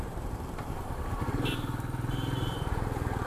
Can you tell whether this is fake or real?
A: fake